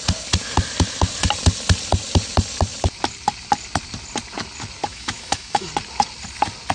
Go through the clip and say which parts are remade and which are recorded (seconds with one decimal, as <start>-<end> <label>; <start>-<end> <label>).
0.0-4.9 recorded; 4.9-5.7 remade; 5.7-6.7 recorded